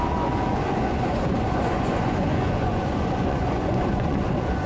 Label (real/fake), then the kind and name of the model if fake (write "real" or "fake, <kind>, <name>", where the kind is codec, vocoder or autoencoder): fake, vocoder, Vocos